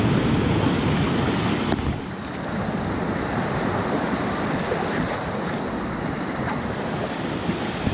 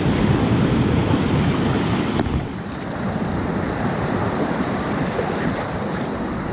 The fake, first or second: second